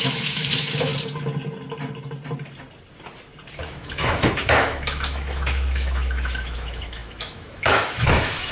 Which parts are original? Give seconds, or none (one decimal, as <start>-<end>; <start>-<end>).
0.9-3.6